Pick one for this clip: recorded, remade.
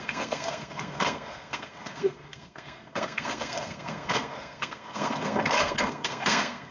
remade